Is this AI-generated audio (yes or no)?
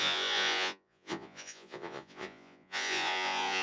yes